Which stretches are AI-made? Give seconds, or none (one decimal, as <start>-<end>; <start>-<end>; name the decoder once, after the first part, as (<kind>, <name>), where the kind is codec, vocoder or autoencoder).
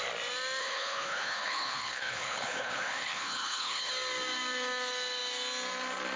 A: 0.6-3.9 (codec, HILCodec)